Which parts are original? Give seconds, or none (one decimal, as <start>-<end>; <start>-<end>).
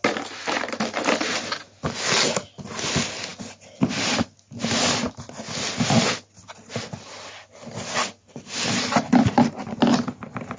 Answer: 0.0-10.6